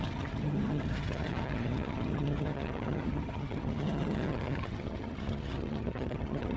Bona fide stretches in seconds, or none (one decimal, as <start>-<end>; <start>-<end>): none

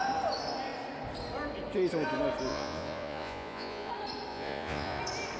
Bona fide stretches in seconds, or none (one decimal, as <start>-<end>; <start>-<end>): 0.0-2.5; 3.9-4.3; 5.0-5.4

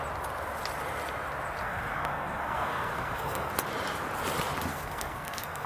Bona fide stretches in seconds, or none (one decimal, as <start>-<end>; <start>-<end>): 0.0-1.6; 3.5-4.7